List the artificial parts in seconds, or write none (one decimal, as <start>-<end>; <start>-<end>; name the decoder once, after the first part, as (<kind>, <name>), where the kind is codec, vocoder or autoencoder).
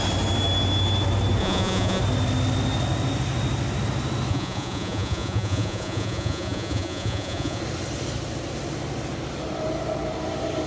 1.4-2.0 (vocoder, Vocos); 4.3-7.6